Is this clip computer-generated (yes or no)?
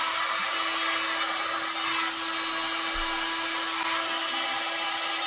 no